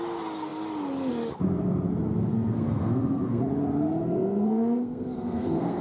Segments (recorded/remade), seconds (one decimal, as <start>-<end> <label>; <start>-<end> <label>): 0.0-2.3 recorded; 2.3-3.4 remade; 3.4-4.0 recorded; 4.0-5.8 remade